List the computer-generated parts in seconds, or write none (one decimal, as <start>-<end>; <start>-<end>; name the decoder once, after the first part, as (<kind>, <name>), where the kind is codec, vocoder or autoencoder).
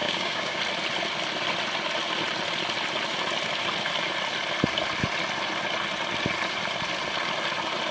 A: 0.0-0.6 (codec, DAC)